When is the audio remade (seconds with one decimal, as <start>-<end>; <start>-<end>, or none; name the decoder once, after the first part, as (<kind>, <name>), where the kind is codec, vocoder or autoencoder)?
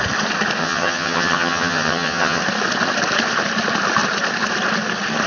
0.6-2.4 (vocoder, HiFi-GAN)